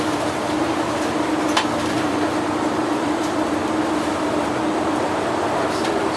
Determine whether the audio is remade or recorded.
remade